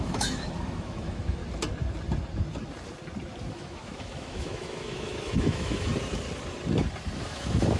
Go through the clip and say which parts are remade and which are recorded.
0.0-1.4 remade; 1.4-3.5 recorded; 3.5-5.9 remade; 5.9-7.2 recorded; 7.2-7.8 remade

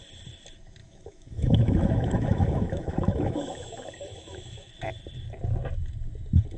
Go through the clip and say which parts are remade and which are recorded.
0.0-0.8 recorded; 0.8-4.7 remade; 4.7-6.6 recorded

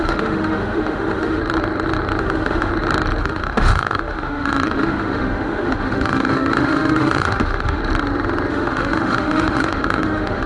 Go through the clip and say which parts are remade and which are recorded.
0.0-1.4 remade; 1.4-2.2 recorded; 2.2-2.7 remade; 2.7-3.2 recorded; 3.2-7.8 remade; 7.8-8.5 recorded; 8.5-10.5 remade